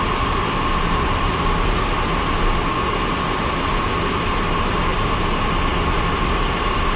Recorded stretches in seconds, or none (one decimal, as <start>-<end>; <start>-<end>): 0.0-7.0